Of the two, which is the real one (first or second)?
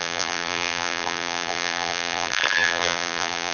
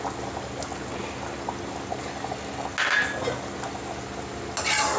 second